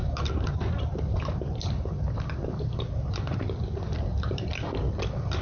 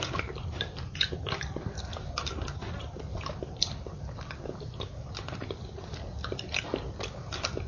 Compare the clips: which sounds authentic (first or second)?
second